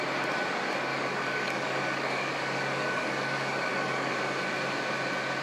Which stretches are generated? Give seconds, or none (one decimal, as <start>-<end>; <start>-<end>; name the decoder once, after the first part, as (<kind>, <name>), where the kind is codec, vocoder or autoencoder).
0.9-4.1 (codec, DAC)